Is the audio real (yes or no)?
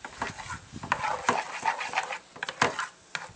yes